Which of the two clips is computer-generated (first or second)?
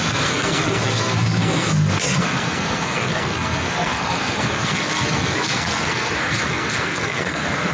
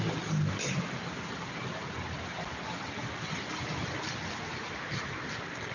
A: first